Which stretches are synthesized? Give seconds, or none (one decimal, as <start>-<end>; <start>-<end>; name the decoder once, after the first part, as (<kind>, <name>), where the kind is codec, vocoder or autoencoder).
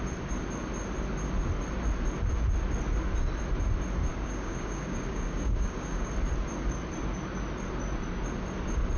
4.1-6.1 (codec, DAC)